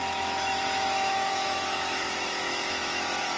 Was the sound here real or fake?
fake